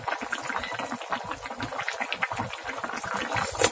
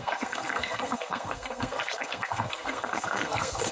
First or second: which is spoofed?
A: second